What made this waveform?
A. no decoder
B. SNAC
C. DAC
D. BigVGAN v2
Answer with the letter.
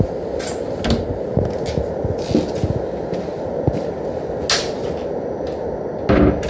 A